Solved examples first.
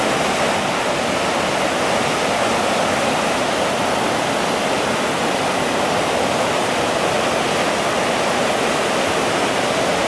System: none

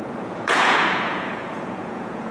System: vocoder, Vocos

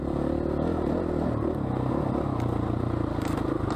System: none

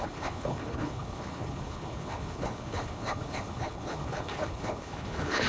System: codec, HILCodec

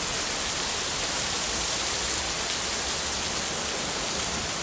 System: none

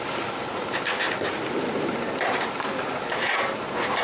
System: none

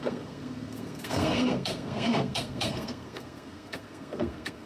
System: codec, SNAC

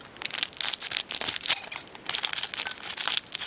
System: none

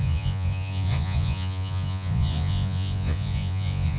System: vocoder, Vocos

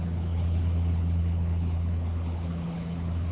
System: codec, HILCodec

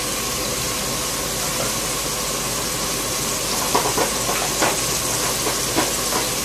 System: none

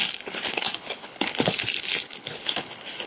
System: codec, HILCodec